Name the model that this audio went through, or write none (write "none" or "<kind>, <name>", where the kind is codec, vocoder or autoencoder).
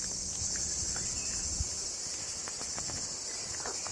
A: none